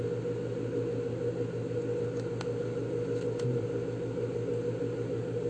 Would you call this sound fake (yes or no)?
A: no